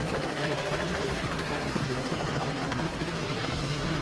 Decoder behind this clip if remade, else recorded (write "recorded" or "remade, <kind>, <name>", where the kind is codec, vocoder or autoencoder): remade, codec, SNAC